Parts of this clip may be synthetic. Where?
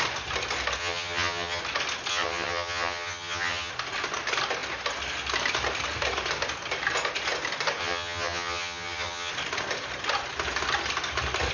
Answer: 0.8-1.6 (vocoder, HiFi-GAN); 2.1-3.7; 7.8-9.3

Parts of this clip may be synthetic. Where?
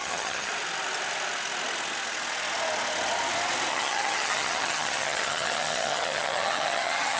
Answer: 0.0-0.5 (vocoder, HiFi-GAN); 3.7-7.2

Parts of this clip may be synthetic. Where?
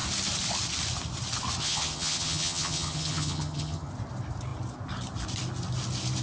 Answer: 1.6-3.9 (vocoder, HiFi-GAN)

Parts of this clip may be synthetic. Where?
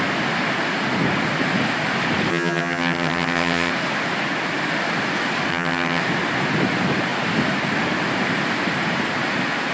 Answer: 2.3-3.7 (vocoder, HiFi-GAN); 5.5-6.0